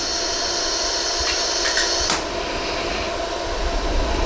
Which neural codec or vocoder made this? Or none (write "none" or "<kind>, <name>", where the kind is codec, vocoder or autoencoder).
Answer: none